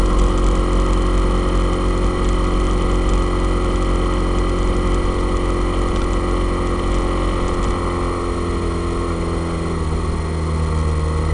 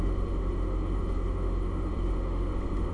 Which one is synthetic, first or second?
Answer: second